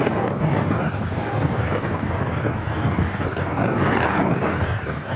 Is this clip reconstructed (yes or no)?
yes